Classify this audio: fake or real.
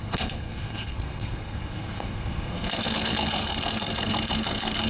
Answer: fake